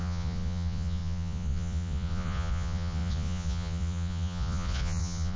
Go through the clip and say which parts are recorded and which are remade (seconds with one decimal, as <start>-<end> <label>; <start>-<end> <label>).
0.0-5.4 remade